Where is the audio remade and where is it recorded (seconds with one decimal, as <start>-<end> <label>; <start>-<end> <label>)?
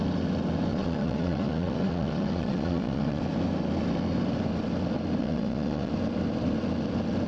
0.0-0.7 recorded; 0.7-3.2 remade; 3.2-5.2 recorded; 5.2-5.9 remade; 5.9-7.3 recorded